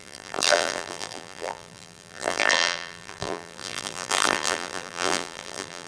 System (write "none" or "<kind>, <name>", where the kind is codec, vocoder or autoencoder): vocoder, BigVGAN v2